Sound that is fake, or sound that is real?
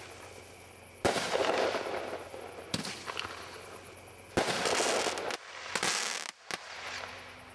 real